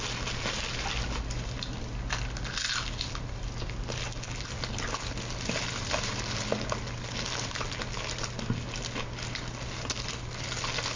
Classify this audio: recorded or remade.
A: recorded